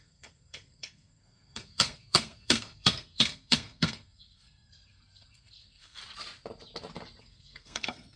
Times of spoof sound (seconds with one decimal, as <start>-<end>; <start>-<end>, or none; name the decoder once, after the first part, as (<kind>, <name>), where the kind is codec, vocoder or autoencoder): 0.0-6.0 (codec, SNAC); 7.2-8.2